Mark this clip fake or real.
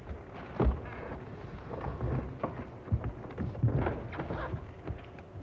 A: real